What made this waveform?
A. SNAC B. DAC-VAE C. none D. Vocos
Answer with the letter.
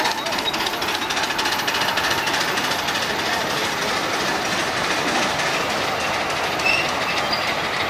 C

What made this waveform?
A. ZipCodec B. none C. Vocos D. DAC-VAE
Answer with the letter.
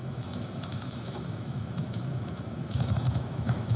D